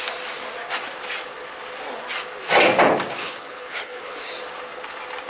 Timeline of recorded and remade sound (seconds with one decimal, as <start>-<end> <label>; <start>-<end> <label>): 0.0-3.2 recorded; 3.2-4.3 remade; 4.3-5.3 recorded